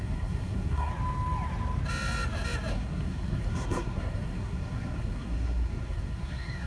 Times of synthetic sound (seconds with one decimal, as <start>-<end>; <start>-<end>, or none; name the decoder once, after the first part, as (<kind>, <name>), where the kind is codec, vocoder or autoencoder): 0.0-0.9 (codec, SNAC); 2.7-6.7